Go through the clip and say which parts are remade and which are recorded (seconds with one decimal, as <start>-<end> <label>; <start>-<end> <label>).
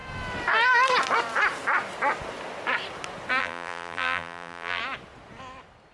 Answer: 0.0-3.4 recorded; 3.4-4.8 remade; 4.8-5.9 recorded